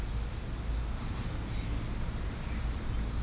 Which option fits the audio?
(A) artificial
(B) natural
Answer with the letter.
B